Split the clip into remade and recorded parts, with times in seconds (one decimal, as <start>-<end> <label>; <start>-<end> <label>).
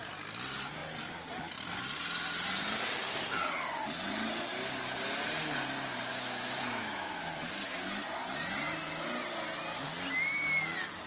0.0-6.1 recorded; 6.1-7.5 remade; 7.5-11.1 recorded